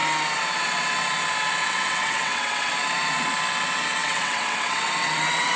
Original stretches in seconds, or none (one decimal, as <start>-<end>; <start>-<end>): 0.0-1.6; 2.7-4.0